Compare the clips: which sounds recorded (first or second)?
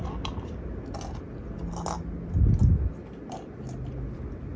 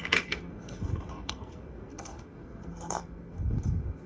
first